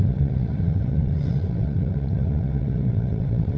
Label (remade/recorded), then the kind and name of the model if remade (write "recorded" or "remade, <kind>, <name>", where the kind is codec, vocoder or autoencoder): remade, vocoder, WaveNeXt